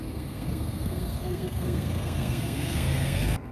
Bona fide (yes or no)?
no